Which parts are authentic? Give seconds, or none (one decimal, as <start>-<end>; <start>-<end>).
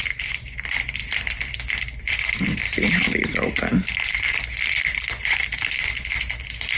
0.0-1.0; 5.1-5.5; 6.1-6.8